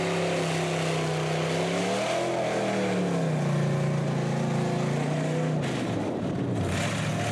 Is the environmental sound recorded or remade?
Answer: recorded